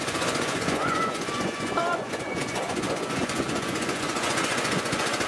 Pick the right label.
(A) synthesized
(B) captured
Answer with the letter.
A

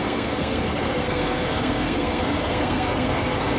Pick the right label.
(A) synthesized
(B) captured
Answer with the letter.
A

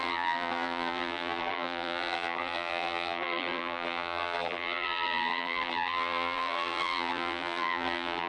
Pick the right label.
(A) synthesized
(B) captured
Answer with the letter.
A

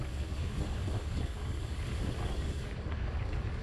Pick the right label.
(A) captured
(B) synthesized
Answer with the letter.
B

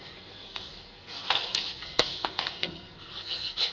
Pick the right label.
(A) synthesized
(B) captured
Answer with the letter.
A